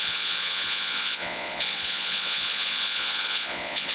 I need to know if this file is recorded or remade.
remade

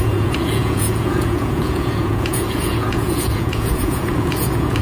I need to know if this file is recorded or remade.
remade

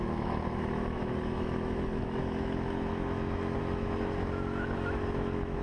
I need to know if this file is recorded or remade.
remade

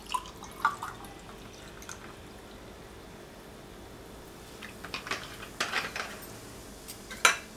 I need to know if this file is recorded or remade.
recorded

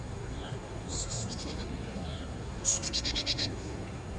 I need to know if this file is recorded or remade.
remade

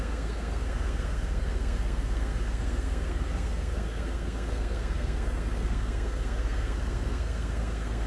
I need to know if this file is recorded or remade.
remade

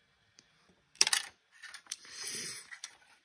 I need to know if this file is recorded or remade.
remade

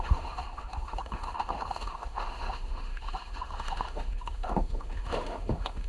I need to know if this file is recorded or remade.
remade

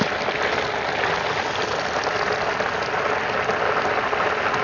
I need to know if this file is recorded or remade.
recorded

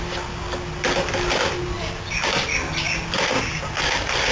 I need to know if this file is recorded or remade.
recorded